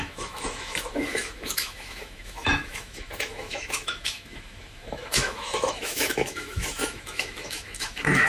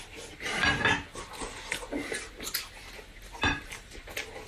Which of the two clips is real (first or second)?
second